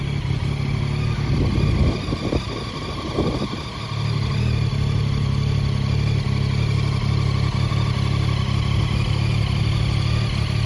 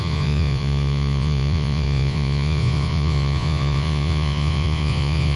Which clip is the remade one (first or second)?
second